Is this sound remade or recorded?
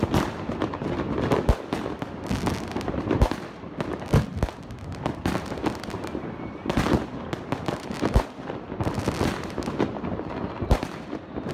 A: recorded